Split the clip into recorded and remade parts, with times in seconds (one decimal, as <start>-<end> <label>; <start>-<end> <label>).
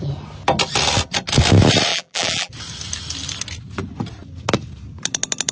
0.0-1.9 recorded; 1.9-2.5 remade; 2.5-5.5 recorded